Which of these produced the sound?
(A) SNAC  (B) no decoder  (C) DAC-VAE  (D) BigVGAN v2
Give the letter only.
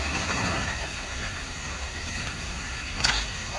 A